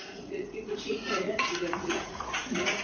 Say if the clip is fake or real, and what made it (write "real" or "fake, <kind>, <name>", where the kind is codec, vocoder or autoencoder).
fake, vocoder, Vocos